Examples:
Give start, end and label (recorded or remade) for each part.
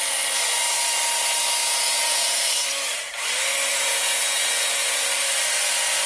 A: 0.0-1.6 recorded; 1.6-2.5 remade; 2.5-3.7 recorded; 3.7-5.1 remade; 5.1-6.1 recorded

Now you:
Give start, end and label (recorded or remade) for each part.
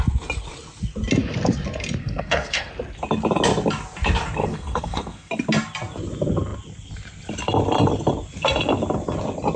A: 0.0-2.0 recorded; 2.0-2.7 remade; 2.7-4.4 recorded; 4.4-5.3 remade; 5.3-9.6 recorded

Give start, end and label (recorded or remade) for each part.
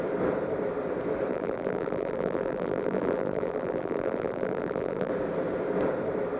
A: 0.0-1.3 recorded; 1.3-5.1 remade; 5.1-6.4 recorded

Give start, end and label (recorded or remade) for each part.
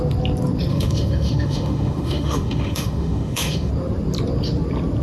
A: 0.0-0.7 recorded; 0.7-3.7 remade; 3.7-5.0 recorded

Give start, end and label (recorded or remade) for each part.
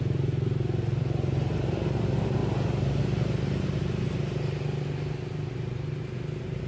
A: 0.0-6.7 recorded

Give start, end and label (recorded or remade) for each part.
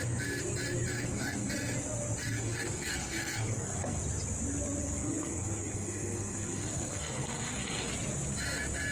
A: 0.0-0.9 recorded; 0.9-1.5 remade; 1.5-2.2 recorded; 2.2-4.0 remade; 4.0-4.8 recorded; 4.8-7.9 remade; 7.9-8.9 recorded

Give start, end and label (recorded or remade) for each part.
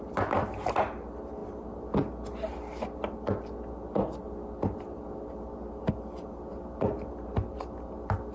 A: 0.0-8.3 recorded